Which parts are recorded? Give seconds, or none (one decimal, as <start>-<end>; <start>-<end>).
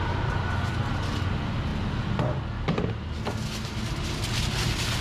0.0-5.0